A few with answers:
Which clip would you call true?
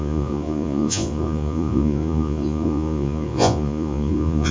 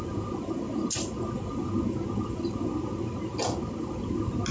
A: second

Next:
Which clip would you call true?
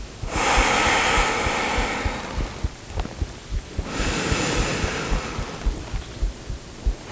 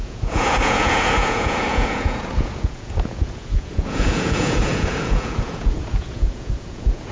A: first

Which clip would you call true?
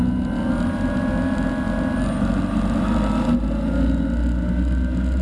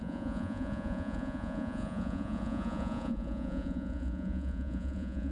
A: first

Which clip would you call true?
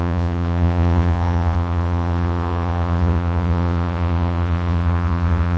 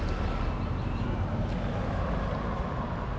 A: second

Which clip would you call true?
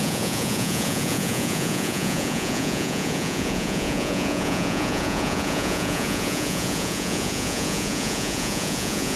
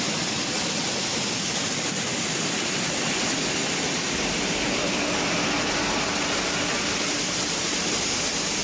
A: second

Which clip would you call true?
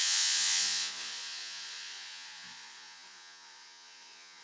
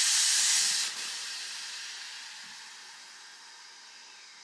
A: second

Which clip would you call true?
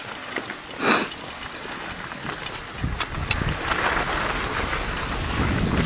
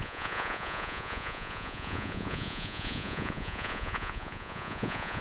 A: first